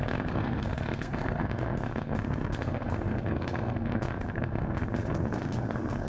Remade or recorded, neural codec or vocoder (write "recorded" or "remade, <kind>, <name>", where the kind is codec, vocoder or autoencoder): remade, codec, SNAC